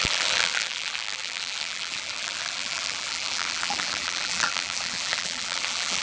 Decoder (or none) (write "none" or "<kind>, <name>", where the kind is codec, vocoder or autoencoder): vocoder, BigVGAN v2